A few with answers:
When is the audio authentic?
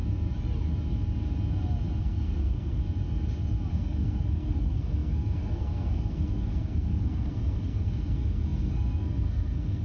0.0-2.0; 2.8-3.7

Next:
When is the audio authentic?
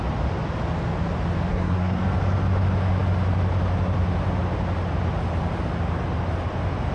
0.0-1.5; 2.0-6.9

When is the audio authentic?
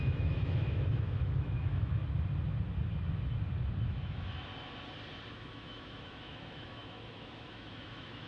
2.0-3.9; 4.5-5.3